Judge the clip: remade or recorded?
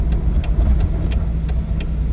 recorded